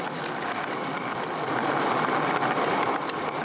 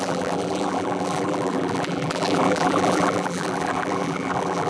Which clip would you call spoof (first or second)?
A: second